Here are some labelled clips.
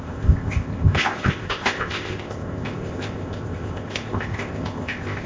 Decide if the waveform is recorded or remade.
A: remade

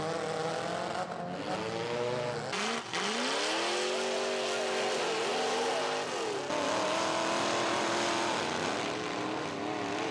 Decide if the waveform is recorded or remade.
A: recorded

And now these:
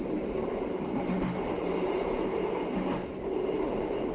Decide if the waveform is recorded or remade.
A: remade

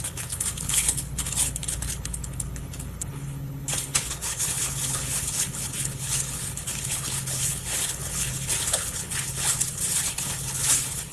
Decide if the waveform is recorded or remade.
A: remade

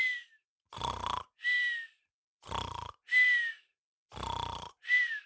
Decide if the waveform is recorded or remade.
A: recorded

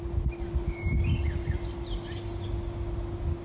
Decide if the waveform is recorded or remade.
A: recorded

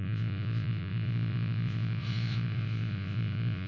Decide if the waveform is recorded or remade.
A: remade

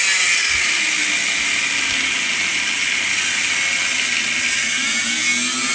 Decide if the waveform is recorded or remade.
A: recorded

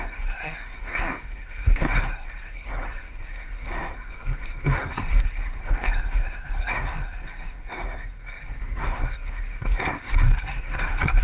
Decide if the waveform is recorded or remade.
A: remade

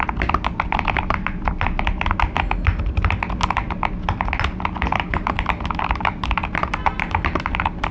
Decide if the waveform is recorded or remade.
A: recorded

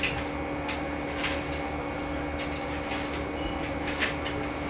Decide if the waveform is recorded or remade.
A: recorded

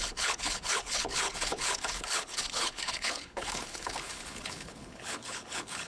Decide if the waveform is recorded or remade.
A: remade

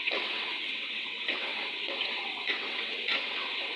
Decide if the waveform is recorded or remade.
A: remade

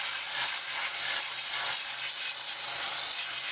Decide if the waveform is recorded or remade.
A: recorded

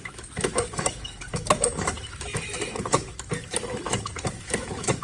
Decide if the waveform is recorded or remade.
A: remade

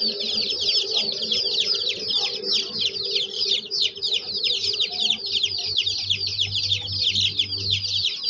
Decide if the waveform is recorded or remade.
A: recorded